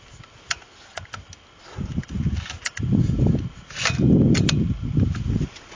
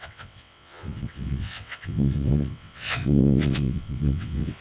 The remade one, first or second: second